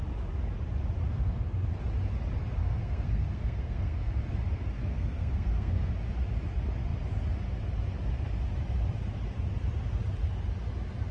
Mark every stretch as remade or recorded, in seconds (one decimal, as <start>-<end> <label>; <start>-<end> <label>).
0.0-1.1 recorded; 1.1-1.7 remade; 1.7-2.6 recorded; 2.6-4.2 remade; 4.2-4.8 recorded; 4.8-5.9 remade; 5.9-11.1 recorded